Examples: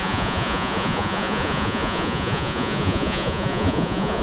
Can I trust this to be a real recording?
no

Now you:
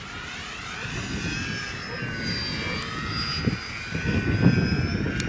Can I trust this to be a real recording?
yes